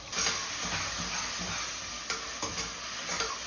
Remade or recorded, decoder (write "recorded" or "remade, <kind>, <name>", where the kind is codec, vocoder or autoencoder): recorded